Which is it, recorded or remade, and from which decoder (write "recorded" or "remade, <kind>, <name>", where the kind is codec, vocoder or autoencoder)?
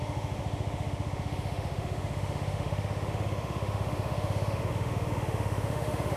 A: remade, autoencoder, DAC-VAE